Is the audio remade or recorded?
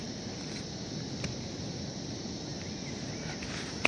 recorded